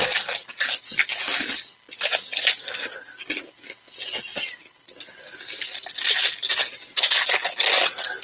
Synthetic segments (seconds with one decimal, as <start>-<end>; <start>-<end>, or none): none